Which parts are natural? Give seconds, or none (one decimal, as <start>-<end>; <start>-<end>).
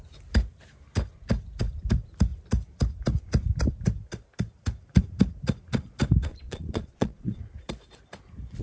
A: 0.0-6.3; 7.4-8.6